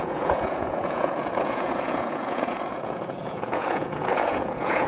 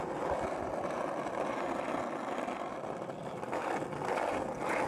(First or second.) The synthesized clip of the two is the first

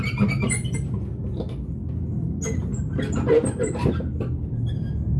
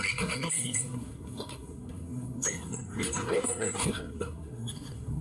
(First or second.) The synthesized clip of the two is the second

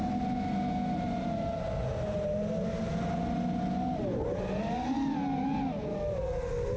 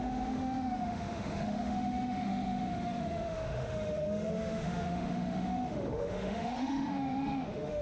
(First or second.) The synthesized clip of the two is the second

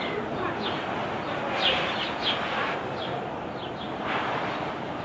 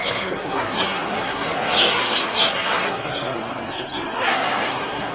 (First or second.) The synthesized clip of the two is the second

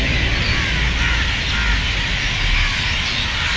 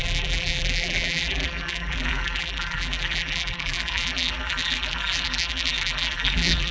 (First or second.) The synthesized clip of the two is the second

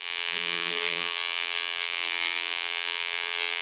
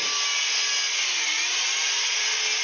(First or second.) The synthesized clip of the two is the first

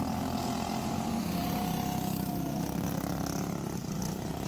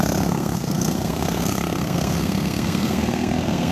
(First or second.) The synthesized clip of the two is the second